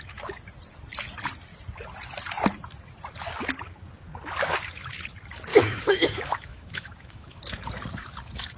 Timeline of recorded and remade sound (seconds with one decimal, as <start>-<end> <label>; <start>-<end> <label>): 0.0-5.5 recorded; 5.5-7.4 remade; 7.4-8.6 recorded